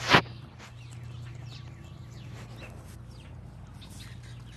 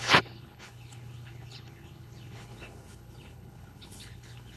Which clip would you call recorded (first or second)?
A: first